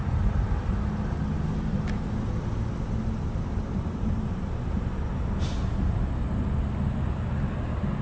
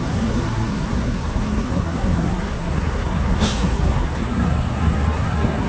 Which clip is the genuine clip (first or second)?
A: first